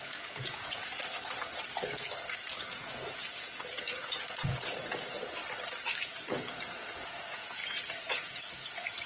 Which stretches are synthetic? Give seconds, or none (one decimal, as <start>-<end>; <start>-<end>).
0.0-0.8; 2.7-5.4; 6.0-9.1